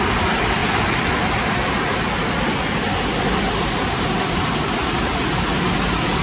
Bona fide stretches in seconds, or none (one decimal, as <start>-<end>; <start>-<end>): 0.0-6.2